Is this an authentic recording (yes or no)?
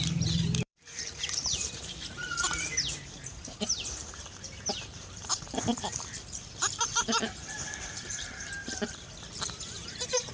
no